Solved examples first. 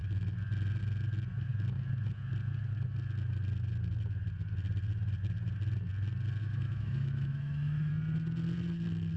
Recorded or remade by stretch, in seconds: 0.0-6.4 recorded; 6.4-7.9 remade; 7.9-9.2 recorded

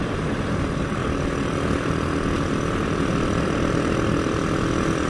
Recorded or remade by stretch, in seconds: 0.0-5.1 recorded

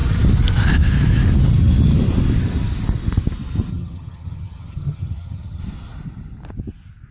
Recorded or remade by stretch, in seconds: 0.0-3.7 recorded; 3.7-5.6 remade; 5.6-7.1 recorded

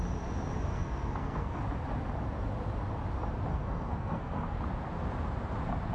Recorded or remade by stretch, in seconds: 0.0-0.7 recorded; 0.7-1.6 remade; 1.6-3.5 recorded; 3.5-4.6 remade; 4.6-5.9 recorded

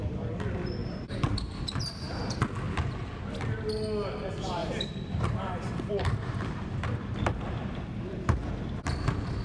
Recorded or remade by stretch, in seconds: 0.0-0.8 recorded; 0.8-2.2 remade; 2.2-4.6 recorded; 4.6-8.5 remade; 8.5-9.4 recorded